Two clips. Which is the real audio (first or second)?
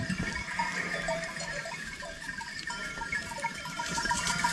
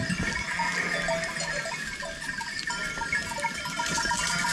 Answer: second